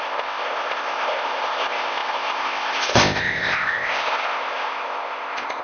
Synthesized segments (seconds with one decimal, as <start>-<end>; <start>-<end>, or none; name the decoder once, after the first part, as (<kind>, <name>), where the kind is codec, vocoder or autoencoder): 0.0-5.6 (codec, ZipCodec)